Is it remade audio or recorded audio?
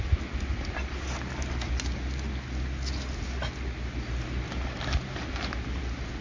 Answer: recorded